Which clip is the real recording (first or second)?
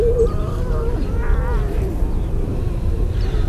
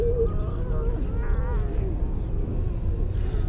second